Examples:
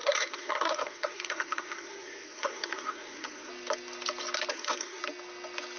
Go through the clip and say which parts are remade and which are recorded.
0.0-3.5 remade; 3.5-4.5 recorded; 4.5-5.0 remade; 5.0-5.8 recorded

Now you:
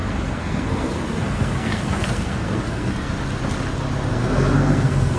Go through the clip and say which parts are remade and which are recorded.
0.0-3.1 remade; 3.1-4.1 recorded; 4.1-5.2 remade